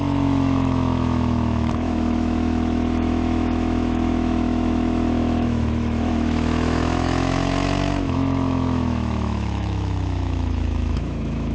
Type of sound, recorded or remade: remade